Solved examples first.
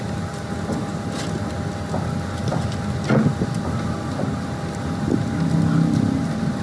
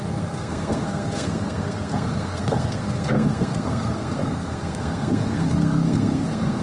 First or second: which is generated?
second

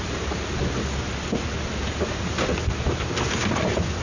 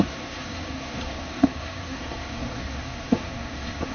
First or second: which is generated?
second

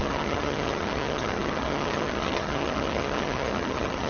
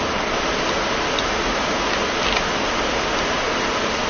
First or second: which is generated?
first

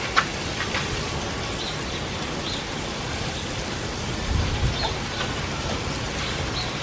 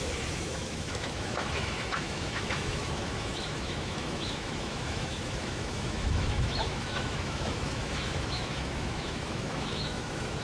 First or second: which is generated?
second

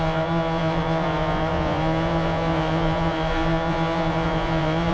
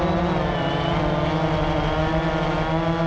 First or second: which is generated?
first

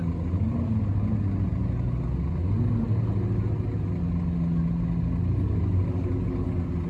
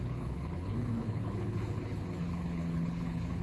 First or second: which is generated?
second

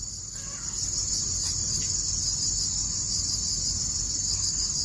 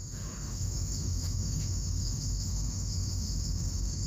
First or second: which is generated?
second